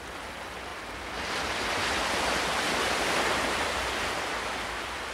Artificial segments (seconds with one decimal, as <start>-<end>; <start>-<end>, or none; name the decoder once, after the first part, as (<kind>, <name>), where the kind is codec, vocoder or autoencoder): none